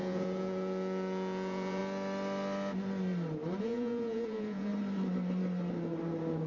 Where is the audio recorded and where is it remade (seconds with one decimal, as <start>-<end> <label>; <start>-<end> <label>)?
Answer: 0.0-1.8 remade; 1.8-3.6 recorded; 3.6-4.7 remade; 4.7-6.5 recorded